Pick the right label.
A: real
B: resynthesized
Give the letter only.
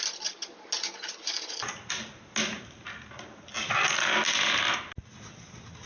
A